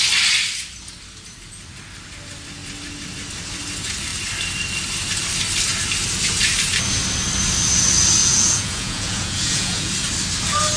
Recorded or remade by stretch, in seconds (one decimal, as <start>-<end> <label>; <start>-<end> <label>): 0.0-8.2 recorded; 8.2-9.9 remade; 9.9-10.8 recorded